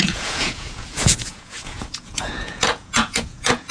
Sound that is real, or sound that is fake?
fake